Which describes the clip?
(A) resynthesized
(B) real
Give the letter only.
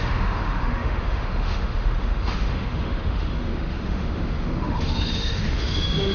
A